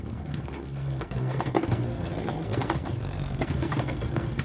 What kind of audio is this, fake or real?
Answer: fake